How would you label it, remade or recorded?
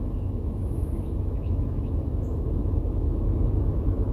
remade